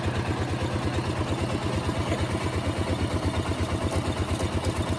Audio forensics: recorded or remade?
recorded